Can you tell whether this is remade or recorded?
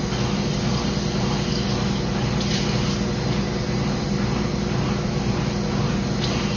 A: recorded